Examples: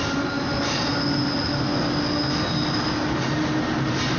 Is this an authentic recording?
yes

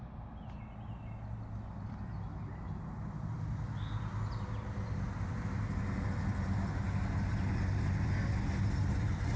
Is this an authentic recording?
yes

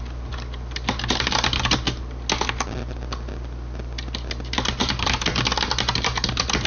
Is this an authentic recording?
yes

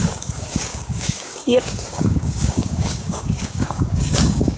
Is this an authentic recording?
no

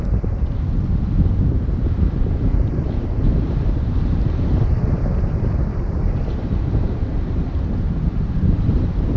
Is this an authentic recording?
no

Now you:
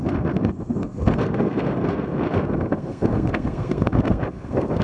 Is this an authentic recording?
no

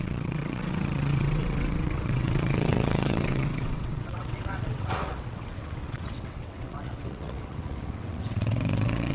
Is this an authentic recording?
no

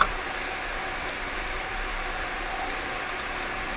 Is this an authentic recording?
no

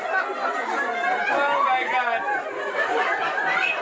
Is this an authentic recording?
yes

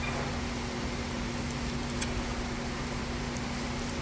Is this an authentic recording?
yes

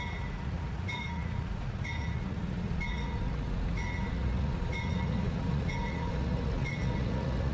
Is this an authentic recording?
no